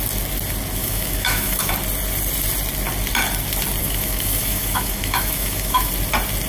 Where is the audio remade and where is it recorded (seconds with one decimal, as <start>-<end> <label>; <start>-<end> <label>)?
0.0-0.8 recorded; 0.8-1.7 remade; 1.7-3.8 recorded; 3.8-5.9 remade; 5.9-6.5 recorded